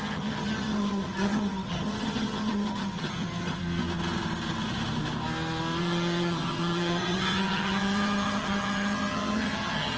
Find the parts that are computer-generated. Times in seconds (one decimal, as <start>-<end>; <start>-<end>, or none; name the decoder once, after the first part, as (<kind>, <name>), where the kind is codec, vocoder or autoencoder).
0.0-3.6 (vocoder, HiFi-GAN); 5.8-10.0